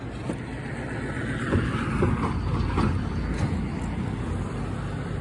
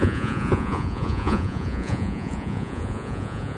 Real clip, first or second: first